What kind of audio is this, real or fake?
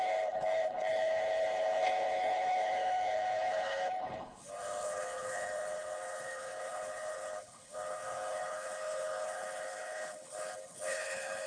fake